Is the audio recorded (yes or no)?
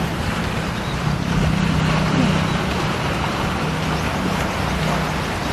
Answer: yes